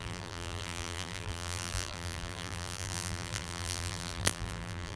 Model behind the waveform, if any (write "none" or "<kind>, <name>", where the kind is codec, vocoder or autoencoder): vocoder, BigVGAN v2